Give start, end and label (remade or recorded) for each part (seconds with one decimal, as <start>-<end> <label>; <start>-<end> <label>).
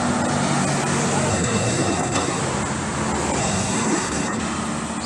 0.0-1.3 recorded; 1.3-2.4 remade; 2.4-3.4 recorded; 3.4-4.4 remade; 4.4-5.1 recorded